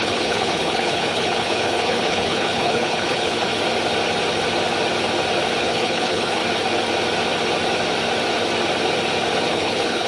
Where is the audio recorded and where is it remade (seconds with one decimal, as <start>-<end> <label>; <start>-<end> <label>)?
0.0-3.5 remade; 3.5-5.6 recorded; 5.6-6.4 remade; 6.4-9.5 recorded; 9.5-10.1 remade